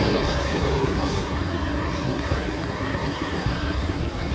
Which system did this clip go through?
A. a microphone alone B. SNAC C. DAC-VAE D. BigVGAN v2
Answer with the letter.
B